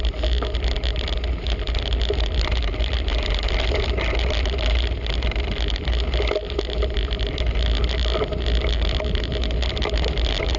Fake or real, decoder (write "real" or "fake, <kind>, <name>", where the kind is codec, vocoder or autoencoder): real